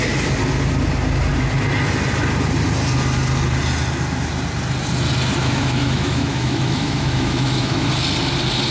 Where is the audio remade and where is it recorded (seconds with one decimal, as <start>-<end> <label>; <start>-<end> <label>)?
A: 0.0-5.4 recorded; 5.4-7.9 remade; 7.9-8.7 recorded